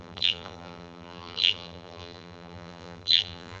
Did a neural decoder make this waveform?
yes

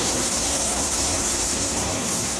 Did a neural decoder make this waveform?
yes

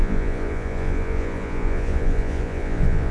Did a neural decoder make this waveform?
yes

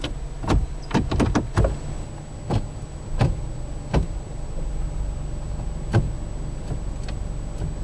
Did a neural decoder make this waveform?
no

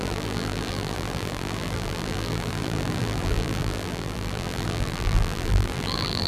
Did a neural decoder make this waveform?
yes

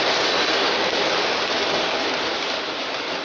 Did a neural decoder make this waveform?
no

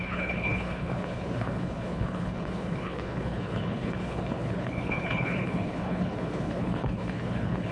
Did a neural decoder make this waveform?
yes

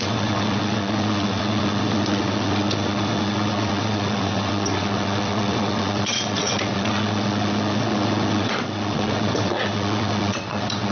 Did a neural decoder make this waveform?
yes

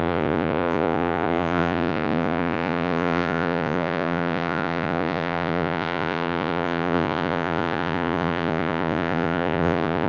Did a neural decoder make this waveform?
yes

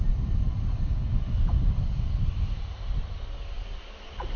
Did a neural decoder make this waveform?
no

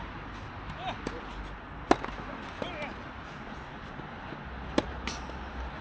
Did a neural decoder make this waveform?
no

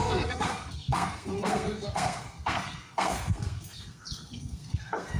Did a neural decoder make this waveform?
yes